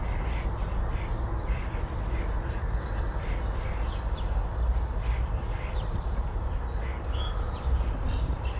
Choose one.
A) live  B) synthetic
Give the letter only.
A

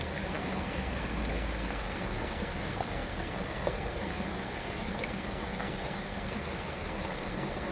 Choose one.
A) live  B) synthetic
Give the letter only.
B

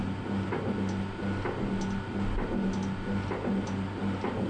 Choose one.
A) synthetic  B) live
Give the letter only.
B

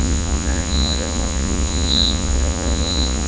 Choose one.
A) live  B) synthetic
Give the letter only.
B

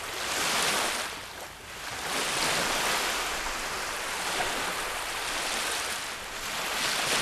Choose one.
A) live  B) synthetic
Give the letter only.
A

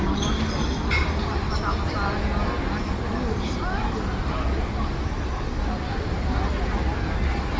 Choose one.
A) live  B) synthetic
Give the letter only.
A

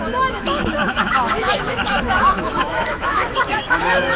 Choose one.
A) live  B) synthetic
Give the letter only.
B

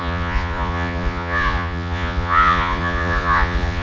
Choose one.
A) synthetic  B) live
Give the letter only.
A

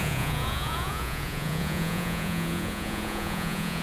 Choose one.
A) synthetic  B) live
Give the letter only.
A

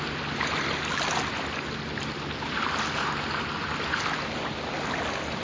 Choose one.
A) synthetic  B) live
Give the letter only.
B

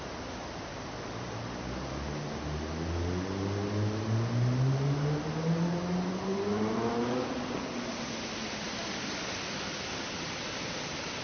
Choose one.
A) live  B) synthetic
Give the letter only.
A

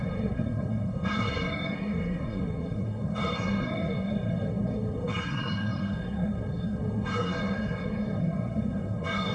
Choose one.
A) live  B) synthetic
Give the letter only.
B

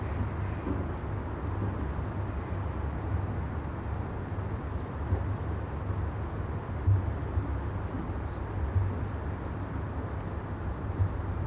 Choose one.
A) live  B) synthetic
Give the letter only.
A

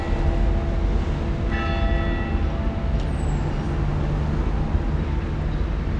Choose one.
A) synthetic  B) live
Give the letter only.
B